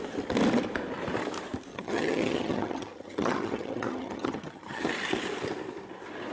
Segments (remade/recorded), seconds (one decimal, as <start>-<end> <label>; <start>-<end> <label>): 0.0-1.7 recorded; 1.7-4.9 remade; 4.9-6.3 recorded